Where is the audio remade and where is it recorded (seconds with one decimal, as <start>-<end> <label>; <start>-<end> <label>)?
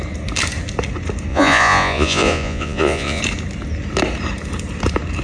0.0-1.3 recorded; 1.3-3.2 remade; 3.2-5.2 recorded